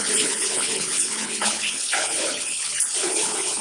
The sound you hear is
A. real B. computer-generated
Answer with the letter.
B